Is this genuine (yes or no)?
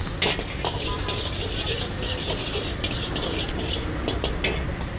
yes